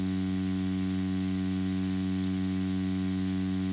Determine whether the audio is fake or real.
real